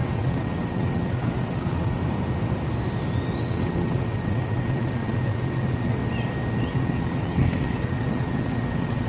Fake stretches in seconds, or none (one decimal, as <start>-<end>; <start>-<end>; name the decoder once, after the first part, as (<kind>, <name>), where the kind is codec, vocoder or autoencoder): 0.0-2.0 (vocoder, WaveNeXt); 3.4-6.0; 6.6-9.1

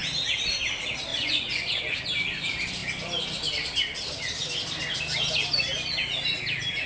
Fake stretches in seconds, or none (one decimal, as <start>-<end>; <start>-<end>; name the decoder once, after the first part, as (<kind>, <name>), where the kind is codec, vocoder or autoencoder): 1.1-1.8 (vocoder, Vocos)

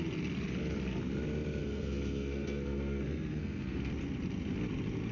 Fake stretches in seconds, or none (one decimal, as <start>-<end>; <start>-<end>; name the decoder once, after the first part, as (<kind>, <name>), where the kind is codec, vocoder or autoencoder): 1.6-3.9 (codec, SNAC)

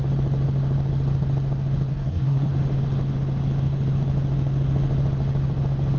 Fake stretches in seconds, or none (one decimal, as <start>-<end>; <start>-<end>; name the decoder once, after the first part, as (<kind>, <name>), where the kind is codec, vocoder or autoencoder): 1.9-2.5 (codec, SNAC)

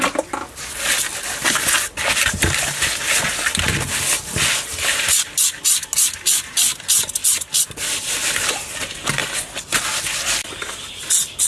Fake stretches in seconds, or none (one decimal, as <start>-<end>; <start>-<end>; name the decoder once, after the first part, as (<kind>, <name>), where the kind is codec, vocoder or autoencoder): none

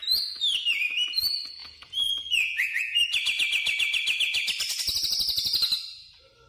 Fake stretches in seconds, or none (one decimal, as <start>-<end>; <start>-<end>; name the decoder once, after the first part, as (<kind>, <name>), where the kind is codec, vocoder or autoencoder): 1.6-3.0 (vocoder, Vocos)

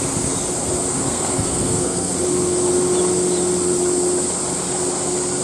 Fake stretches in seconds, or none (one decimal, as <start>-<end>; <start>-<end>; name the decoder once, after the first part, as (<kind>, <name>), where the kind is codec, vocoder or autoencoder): 0.9-2.1 (codec, SNAC)